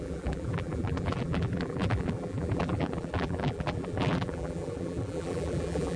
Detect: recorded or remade remade